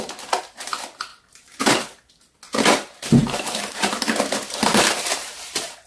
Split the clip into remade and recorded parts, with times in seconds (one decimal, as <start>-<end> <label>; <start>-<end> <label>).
0.0-1.1 recorded; 1.1-2.1 remade; 2.1-3.2 recorded; 3.2-3.9 remade; 3.9-4.6 recorded; 4.6-5.9 remade